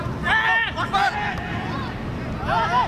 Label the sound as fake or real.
real